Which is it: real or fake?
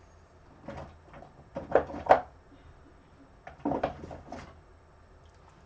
real